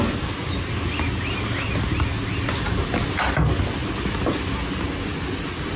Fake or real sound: real